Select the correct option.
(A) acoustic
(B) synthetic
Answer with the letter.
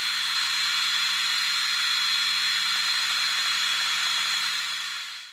A